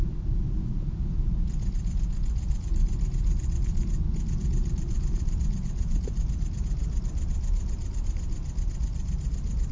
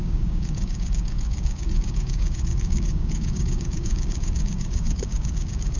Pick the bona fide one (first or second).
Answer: first